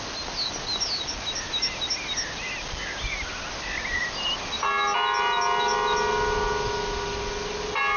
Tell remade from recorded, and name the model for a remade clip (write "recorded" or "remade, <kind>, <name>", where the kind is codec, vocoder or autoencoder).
recorded